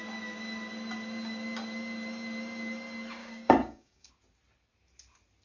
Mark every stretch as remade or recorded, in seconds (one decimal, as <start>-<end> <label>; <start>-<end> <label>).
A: 0.0-3.2 recorded; 3.2-4.1 remade; 4.1-5.4 recorded